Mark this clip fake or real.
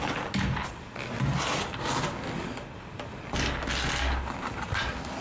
real